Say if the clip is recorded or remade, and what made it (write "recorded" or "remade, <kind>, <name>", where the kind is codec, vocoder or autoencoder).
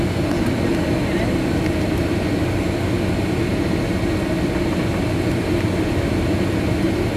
recorded